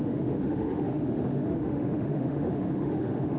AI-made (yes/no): yes